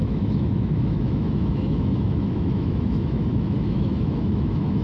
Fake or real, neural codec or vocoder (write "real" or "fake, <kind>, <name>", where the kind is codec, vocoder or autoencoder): fake, autoencoder, DAC-VAE